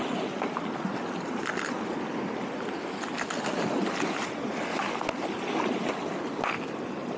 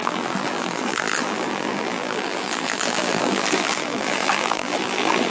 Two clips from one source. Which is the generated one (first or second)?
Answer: second